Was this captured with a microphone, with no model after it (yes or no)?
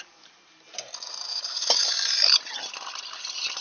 yes